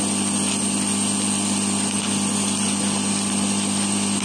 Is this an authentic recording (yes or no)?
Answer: yes